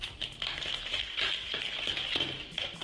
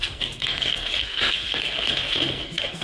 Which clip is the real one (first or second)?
first